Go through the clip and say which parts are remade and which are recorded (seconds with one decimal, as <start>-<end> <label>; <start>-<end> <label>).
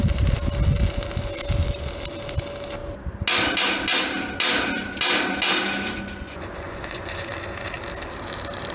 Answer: 0.0-6.3 recorded; 6.3-7.3 remade; 7.3-8.7 recorded